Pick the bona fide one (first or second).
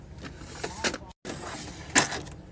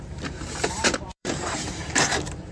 first